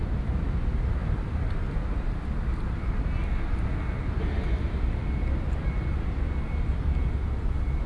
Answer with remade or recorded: recorded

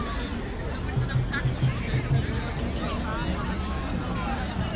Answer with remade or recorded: recorded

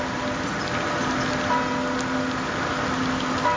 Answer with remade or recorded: recorded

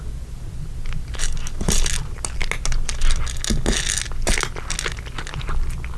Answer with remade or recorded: recorded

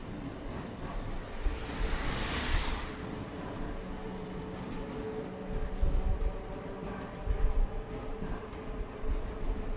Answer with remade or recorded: recorded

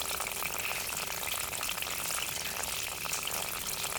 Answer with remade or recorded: recorded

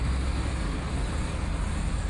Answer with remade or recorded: recorded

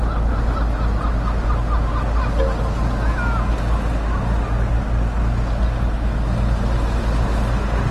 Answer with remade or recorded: recorded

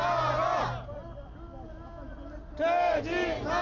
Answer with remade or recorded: recorded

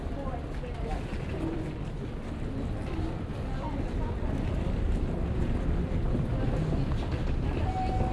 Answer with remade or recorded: recorded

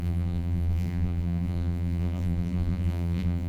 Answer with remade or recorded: remade